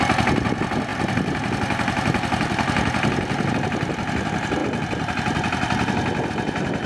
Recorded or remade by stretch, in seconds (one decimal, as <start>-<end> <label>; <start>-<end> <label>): 0.0-6.9 recorded